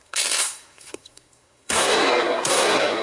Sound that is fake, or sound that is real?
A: fake